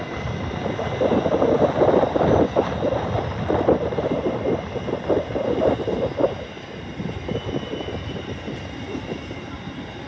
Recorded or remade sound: recorded